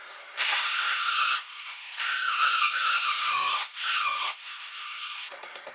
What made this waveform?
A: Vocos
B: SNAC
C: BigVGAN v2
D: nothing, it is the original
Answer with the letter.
B